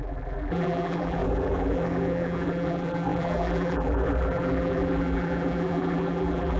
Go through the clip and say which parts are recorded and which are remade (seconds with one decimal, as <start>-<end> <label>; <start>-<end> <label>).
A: 0.0-6.6 remade